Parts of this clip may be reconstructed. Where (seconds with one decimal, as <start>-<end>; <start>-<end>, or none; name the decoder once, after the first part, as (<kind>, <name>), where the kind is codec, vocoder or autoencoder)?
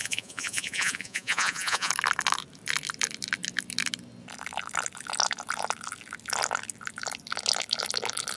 0.0-1.9 (vocoder, Vocos)